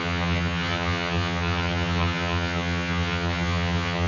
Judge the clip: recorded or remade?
remade